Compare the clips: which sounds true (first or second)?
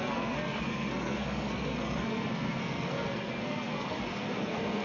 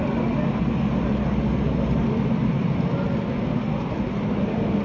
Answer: second